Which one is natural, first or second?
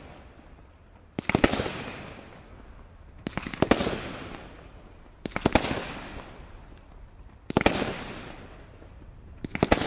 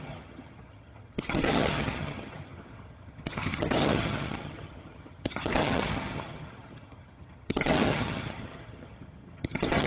first